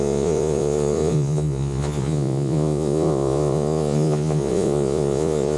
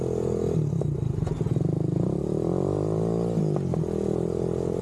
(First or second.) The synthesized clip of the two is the first